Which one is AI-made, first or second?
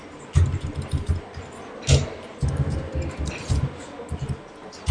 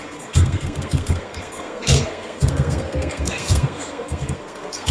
second